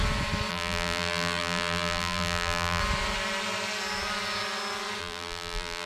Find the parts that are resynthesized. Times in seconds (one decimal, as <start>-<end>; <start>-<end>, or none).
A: 0.5-2.8; 5.0-5.9